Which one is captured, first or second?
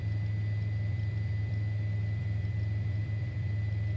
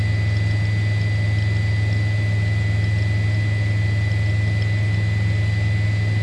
second